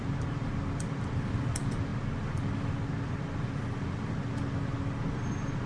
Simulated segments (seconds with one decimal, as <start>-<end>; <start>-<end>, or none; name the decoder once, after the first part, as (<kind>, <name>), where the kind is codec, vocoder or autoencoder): none